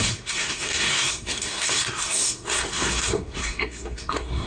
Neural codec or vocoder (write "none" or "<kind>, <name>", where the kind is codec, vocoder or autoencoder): codec, SNAC